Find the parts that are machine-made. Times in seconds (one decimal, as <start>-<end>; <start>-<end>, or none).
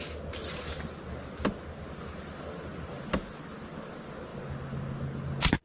none